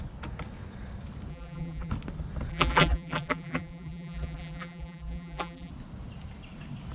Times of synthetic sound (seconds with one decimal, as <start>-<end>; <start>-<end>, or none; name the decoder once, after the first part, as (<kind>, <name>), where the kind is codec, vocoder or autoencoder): 1.3-1.9 (vocoder, BigVGAN v2); 2.5-5.7